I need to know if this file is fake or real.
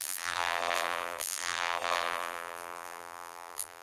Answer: fake